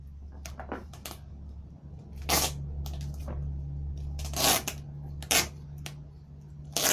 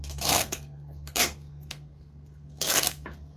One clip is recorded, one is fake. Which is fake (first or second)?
second